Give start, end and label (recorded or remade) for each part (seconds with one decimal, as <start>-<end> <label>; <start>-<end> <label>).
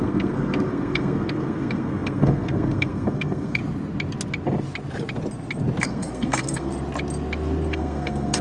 0.0-3.6 remade; 3.6-5.8 recorded; 5.8-6.7 remade; 6.7-7.7 recorded; 7.7-8.4 remade